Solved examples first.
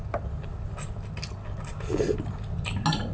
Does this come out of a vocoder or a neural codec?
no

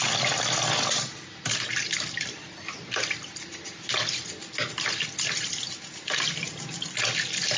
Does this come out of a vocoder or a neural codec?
no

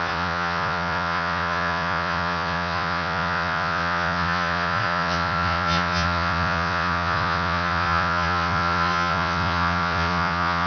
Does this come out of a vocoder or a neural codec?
yes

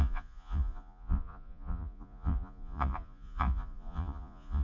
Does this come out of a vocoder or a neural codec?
yes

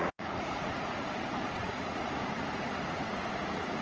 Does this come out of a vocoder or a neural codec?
yes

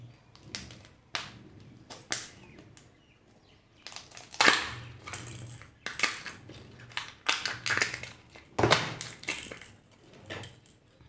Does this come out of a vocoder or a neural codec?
no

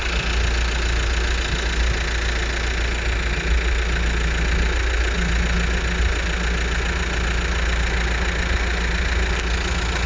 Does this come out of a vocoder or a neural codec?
no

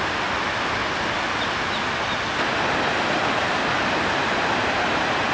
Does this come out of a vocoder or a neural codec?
no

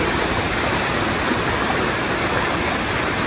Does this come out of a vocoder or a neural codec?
no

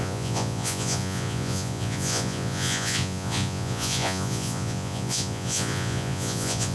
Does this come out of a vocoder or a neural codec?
yes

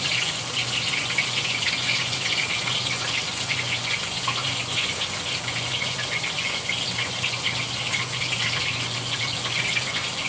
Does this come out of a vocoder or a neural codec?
yes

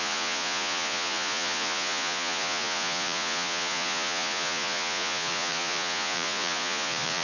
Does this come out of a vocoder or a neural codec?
yes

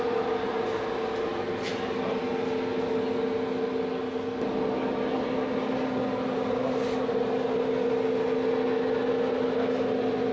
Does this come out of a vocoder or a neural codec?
no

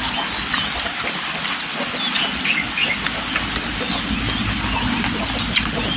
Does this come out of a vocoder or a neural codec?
no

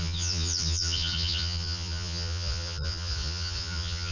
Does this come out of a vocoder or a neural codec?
yes